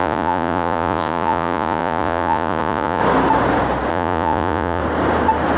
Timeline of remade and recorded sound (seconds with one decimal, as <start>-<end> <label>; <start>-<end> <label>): 0.0-3.0 remade; 3.0-3.9 recorded; 3.9-4.8 remade; 4.8-5.6 recorded